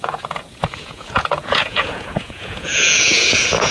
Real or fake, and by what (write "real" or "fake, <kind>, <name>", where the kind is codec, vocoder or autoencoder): fake, vocoder, Vocos